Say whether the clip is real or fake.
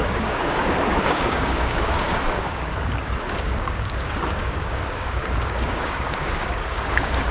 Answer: fake